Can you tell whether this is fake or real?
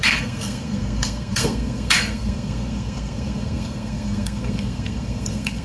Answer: fake